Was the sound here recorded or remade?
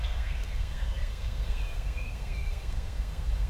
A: remade